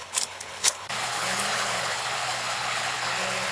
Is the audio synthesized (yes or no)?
yes